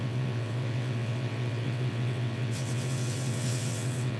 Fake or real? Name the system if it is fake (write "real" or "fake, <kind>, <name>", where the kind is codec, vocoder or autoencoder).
fake, vocoder, WaveNeXt